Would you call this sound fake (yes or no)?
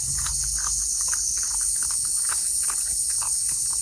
yes